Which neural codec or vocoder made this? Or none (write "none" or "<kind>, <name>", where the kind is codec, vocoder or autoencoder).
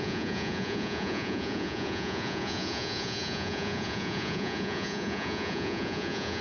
vocoder, Vocos